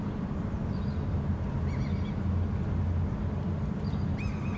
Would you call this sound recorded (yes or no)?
yes